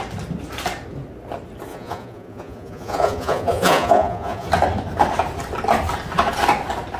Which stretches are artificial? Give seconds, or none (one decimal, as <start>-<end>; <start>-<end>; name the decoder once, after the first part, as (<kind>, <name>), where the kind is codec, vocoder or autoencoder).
1.7-4.5 (vocoder, Vocos)